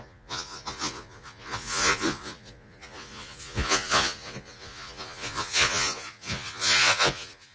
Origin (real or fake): fake